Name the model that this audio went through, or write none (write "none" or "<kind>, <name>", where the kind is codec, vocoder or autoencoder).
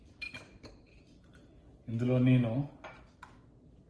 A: none